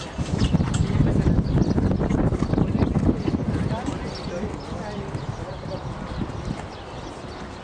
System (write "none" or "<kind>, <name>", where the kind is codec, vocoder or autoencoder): none